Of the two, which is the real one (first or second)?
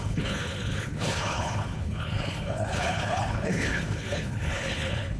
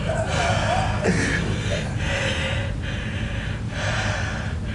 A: second